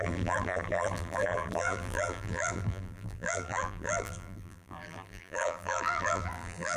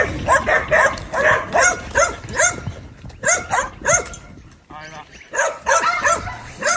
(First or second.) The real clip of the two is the second